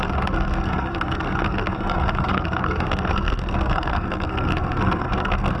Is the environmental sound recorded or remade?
remade